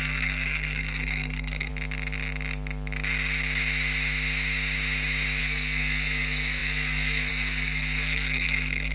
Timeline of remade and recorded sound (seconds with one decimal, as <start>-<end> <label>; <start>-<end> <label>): 0.0-1.7 remade; 1.7-5.4 recorded; 5.4-8.9 remade